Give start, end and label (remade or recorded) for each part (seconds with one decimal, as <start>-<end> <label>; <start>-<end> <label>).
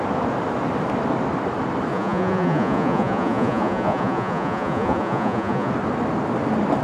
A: 0.0-1.9 recorded; 1.9-5.7 remade; 5.7-6.8 recorded